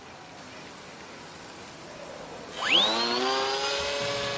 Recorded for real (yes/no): yes